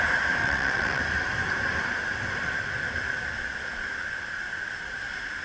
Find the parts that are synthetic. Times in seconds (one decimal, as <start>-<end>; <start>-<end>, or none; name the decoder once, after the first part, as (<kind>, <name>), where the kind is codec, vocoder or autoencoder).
0.4-1.0 (vocoder, WaveNeXt)